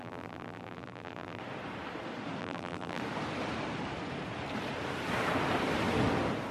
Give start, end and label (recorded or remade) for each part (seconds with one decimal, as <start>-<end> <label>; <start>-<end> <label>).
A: 0.0-1.4 remade; 1.4-2.4 recorded; 2.4-3.0 remade; 3.0-6.5 recorded